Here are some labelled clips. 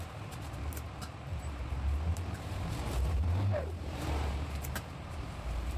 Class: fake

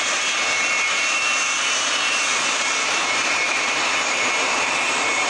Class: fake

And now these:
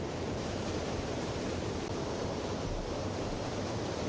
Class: fake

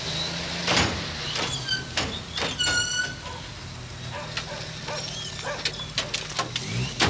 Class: real